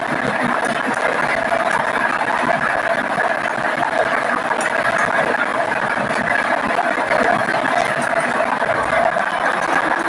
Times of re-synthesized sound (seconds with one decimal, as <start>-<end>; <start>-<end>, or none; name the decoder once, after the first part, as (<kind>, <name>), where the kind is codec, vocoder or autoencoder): 5.5-6.5 (vocoder, BigVGAN v2)